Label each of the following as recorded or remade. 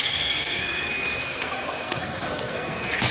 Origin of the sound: remade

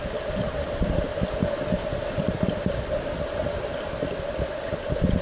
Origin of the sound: recorded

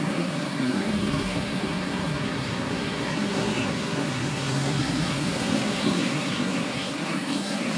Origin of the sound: remade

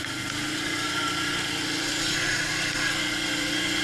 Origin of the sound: recorded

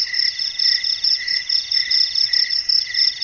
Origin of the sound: recorded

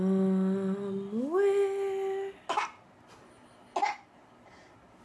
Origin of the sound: recorded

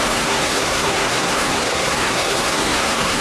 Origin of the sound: remade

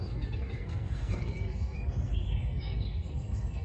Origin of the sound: remade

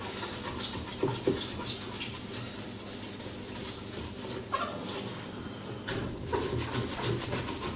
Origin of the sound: recorded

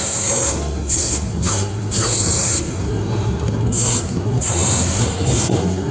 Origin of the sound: remade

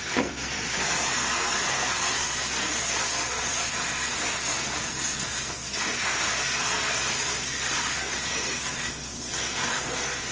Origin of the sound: remade